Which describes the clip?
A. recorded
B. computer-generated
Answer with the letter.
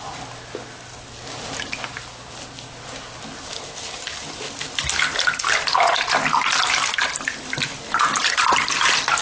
A